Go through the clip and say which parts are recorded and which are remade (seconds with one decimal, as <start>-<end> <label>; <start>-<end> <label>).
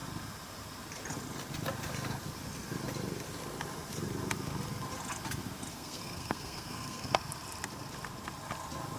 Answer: 0.0-5.7 recorded; 5.7-7.1 remade; 7.1-9.0 recorded